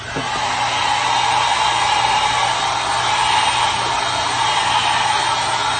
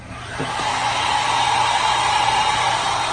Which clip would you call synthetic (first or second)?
second